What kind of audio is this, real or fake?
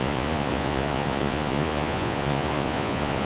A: fake